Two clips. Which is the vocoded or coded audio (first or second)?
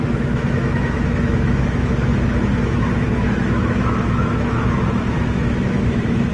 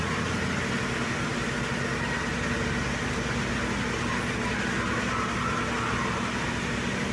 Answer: first